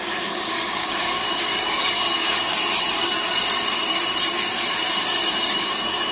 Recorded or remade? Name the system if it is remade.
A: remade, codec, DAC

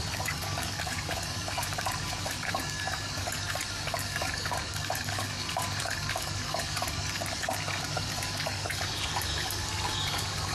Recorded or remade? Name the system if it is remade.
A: remade, codec, DAC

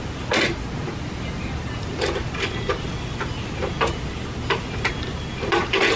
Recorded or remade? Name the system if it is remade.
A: recorded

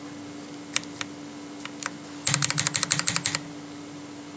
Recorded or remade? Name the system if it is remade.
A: recorded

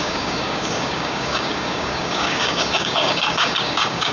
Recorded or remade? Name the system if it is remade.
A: remade, codec, DAC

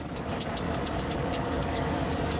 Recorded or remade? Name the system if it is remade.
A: remade, codec, DAC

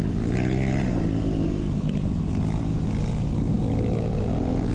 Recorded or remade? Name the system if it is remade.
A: recorded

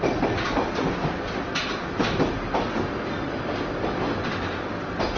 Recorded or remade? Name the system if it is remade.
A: recorded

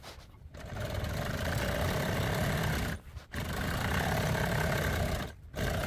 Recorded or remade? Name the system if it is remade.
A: recorded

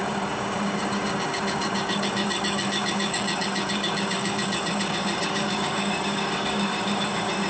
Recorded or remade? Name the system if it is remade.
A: remade, codec, DAC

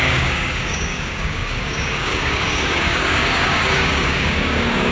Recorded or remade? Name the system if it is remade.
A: remade, codec, DAC